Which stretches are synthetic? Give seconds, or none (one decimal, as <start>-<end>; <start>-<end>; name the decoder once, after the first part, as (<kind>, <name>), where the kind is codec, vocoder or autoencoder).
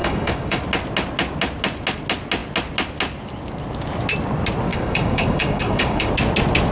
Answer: 0.0-0.6 (codec, DAC); 4.7-6.1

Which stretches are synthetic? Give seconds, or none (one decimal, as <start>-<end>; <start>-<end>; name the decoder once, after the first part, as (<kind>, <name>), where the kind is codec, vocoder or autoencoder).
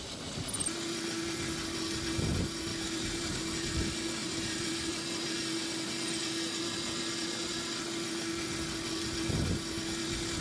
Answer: 2.7-3.6 (vocoder, BigVGAN v2); 4.2-4.9